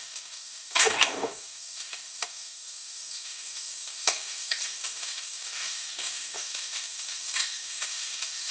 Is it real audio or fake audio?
fake